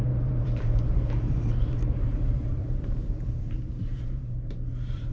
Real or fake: fake